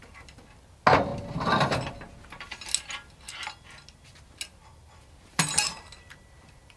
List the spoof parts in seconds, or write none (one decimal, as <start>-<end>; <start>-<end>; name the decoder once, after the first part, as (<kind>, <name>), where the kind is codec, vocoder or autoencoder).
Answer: none